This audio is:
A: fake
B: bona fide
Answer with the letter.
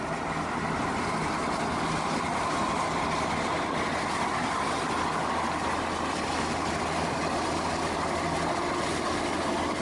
B